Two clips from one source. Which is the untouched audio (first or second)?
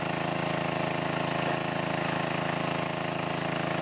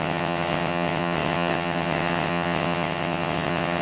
first